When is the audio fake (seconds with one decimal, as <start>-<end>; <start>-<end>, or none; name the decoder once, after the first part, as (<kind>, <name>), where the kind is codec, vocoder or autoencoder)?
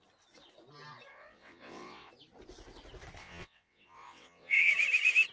1.1-2.1 (vocoder, WaveNeXt); 3.2-4.7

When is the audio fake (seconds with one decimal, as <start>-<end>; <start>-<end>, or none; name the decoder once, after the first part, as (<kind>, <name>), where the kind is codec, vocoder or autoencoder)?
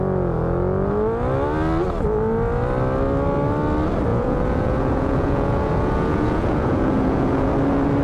4.1-7.5 (vocoder, Vocos)